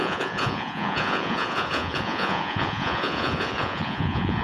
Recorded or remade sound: remade